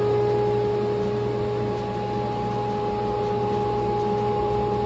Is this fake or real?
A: real